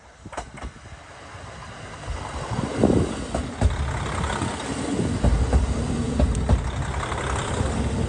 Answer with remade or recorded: recorded